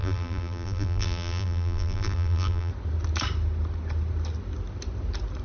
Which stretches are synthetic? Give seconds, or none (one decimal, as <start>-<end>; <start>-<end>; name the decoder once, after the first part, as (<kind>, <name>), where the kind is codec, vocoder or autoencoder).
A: 0.0-2.7 (vocoder, BigVGAN v2)